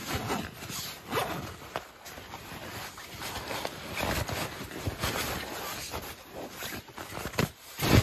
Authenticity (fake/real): real